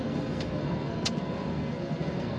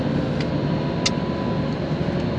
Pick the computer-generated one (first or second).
first